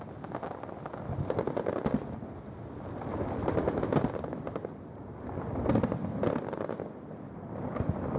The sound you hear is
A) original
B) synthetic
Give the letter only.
A